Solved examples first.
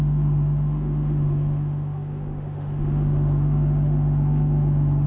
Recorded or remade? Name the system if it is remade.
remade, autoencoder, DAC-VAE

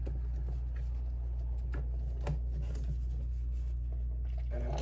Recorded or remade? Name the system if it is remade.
recorded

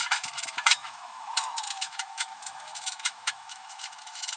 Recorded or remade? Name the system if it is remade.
remade, autoencoder, DAC-VAE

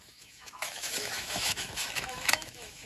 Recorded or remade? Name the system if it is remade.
remade, autoencoder, DAC-VAE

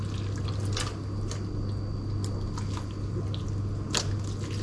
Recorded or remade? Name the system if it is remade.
recorded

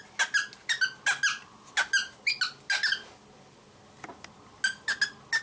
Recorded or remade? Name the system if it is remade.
recorded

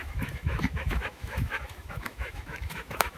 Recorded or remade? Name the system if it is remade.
remade, autoencoder, DAC-VAE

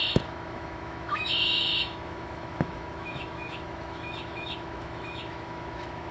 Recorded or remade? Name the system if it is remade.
remade, autoencoder, DAC-VAE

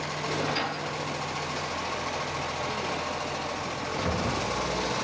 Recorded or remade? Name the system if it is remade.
recorded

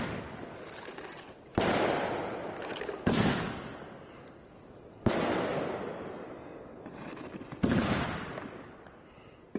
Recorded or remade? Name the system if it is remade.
recorded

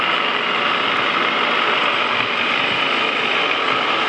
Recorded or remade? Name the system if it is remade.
recorded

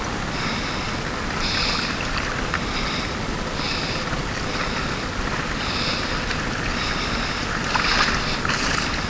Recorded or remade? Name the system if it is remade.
recorded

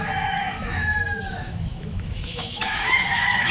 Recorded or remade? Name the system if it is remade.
remade, autoencoder, DAC-VAE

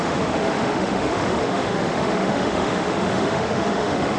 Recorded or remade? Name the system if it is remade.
remade, autoencoder, DAC-VAE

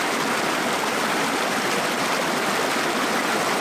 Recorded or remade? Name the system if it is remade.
recorded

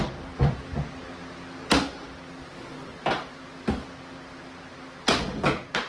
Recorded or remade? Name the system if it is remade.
recorded